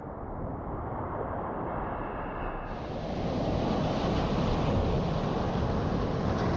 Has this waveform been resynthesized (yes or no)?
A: no